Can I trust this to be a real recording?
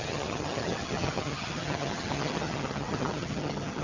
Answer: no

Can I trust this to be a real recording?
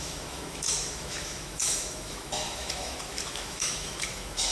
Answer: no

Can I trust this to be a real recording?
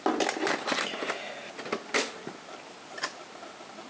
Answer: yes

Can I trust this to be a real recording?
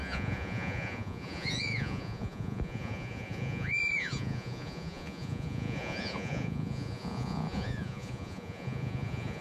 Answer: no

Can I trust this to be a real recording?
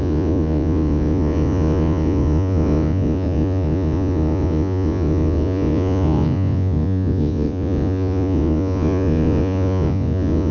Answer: no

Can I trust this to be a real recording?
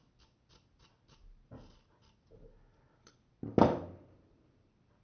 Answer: yes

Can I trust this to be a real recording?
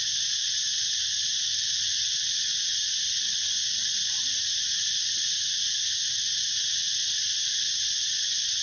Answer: yes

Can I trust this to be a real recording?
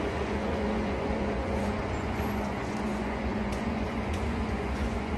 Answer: no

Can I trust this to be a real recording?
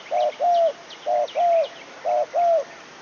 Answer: yes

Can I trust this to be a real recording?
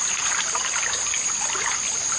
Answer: yes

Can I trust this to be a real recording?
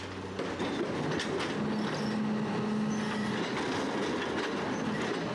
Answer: yes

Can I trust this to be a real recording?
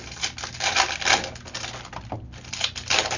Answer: yes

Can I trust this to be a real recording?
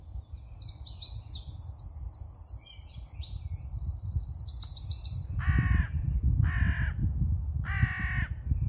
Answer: yes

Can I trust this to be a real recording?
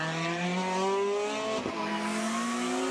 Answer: yes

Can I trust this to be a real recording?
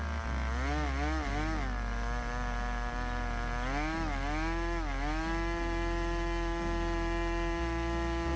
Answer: yes